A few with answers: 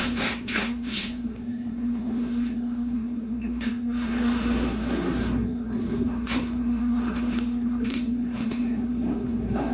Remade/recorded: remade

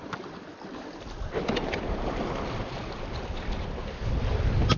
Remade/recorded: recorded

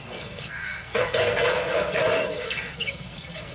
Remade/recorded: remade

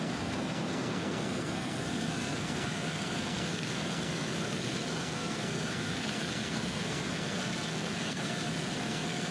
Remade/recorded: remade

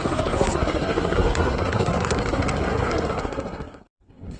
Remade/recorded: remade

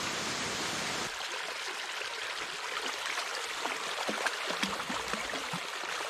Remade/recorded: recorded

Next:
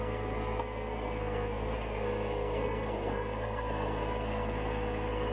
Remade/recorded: remade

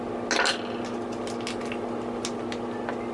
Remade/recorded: recorded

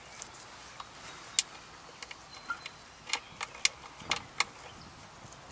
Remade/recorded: recorded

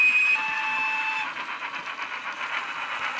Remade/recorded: recorded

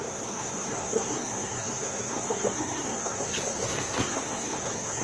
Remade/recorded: remade